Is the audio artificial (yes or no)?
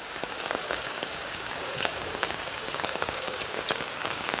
yes